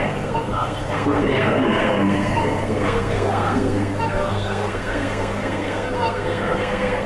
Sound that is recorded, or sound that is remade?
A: remade